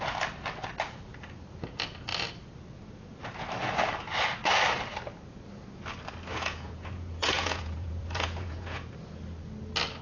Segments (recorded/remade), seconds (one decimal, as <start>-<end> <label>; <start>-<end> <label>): 0.0-6.3 recorded; 6.3-8.9 remade; 8.9-10.0 recorded